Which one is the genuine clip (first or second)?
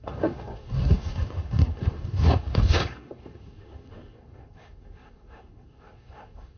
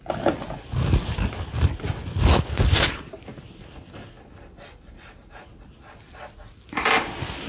second